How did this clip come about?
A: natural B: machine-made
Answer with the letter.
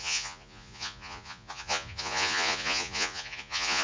B